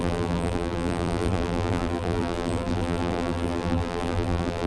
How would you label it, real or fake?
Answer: fake